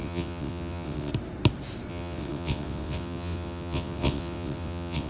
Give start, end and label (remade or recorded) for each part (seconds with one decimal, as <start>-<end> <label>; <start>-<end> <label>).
0.0-1.1 remade; 1.1-1.9 recorded; 1.9-5.1 remade